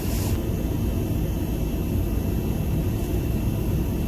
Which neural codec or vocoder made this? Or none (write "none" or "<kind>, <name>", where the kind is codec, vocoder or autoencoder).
none